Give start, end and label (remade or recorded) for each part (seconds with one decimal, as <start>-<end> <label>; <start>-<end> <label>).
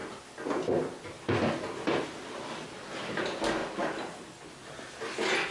0.0-5.5 recorded